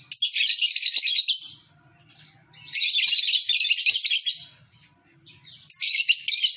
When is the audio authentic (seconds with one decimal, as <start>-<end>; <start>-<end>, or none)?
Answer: 0.0-6.6